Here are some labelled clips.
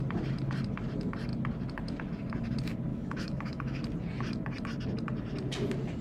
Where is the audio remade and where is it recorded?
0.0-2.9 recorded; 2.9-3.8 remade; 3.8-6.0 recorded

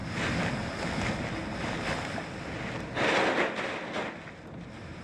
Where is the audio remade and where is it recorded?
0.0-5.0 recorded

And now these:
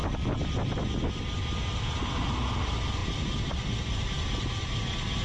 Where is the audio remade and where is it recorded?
0.0-5.2 recorded

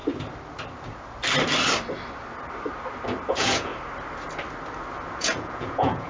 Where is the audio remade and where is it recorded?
0.0-3.3 recorded; 3.3-3.7 remade; 3.7-5.1 recorded; 5.1-6.1 remade

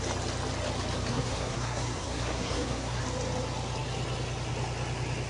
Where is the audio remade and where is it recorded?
0.0-1.1 recorded; 1.1-3.0 remade; 3.0-5.3 recorded

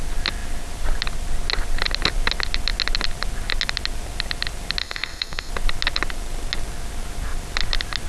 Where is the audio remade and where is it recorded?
0.0-4.8 recorded; 4.8-5.5 remade; 5.5-8.1 recorded